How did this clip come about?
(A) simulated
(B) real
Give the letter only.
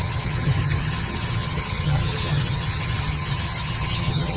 A